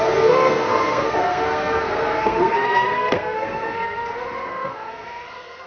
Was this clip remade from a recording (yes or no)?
yes